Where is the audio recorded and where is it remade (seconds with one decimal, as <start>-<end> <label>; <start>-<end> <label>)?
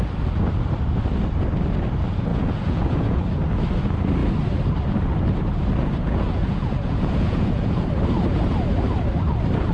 0.0-2.3 recorded; 2.3-3.2 remade; 3.2-6.0 recorded; 6.0-7.9 remade; 7.9-9.7 recorded